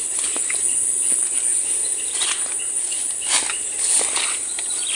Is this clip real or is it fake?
real